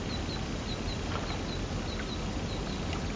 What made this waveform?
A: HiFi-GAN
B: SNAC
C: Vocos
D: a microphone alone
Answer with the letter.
D